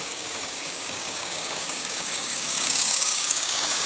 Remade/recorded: remade